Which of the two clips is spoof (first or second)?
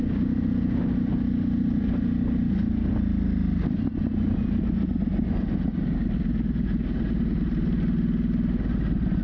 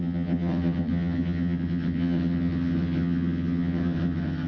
second